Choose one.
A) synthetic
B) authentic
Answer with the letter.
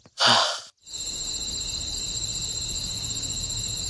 B